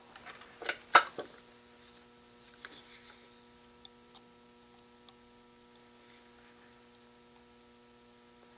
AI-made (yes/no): no